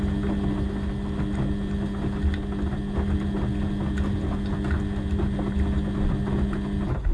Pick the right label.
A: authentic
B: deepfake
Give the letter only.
A